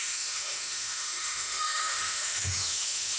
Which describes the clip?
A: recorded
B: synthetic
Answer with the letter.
B